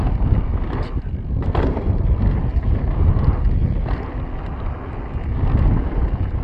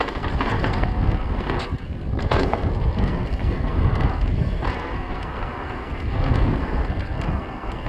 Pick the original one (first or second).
first